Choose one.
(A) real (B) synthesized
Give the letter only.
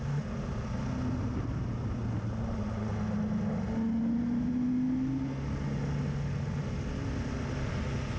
A